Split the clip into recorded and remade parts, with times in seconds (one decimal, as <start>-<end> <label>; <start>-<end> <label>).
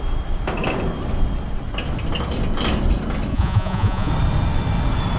0.0-3.3 recorded; 3.3-4.1 remade; 4.1-5.2 recorded